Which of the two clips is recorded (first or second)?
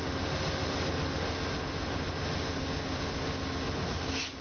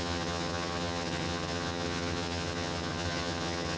first